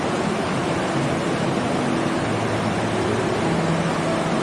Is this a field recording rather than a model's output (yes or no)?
yes